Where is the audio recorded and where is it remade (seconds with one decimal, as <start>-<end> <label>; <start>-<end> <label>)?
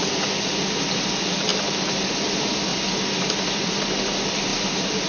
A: 0.0-5.1 recorded